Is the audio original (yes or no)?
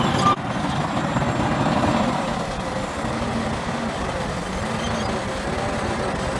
yes